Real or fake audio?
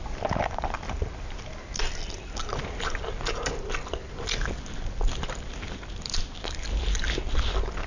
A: real